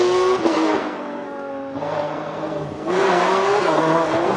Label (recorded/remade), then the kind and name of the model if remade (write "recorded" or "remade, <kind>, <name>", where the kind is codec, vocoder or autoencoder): remade, codec, SNAC